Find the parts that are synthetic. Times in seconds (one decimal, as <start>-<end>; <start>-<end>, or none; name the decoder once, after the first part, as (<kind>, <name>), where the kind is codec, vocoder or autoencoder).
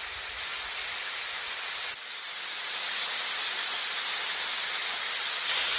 none